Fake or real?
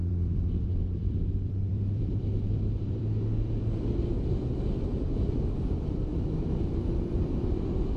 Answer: fake